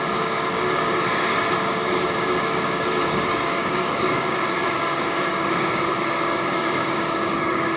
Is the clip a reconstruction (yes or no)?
yes